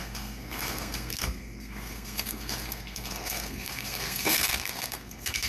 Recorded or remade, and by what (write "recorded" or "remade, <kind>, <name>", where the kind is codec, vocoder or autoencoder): remade, codec, SNAC